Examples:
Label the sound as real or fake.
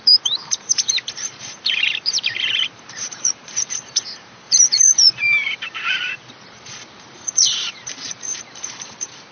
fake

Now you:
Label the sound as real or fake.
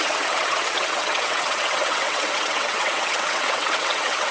fake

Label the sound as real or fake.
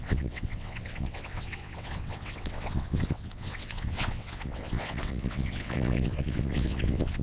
fake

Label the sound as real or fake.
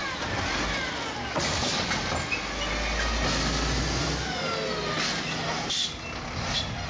real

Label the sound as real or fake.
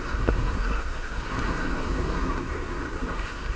fake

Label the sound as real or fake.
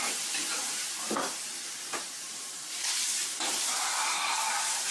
fake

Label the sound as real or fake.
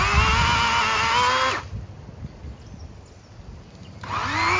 real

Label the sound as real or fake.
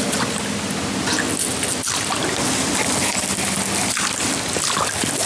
real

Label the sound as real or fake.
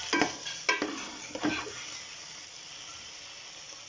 real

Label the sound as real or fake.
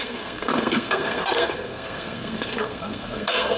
fake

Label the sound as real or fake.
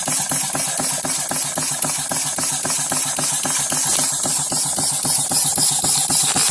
real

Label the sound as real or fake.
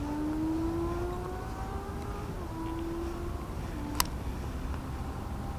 real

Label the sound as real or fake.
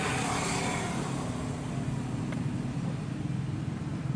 real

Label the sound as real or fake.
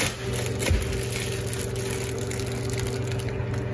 real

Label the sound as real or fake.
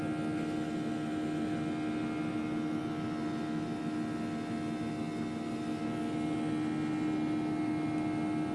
real